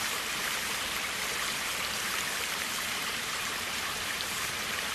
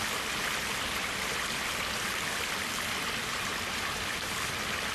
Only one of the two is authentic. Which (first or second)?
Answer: second